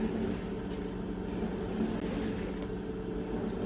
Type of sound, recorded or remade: recorded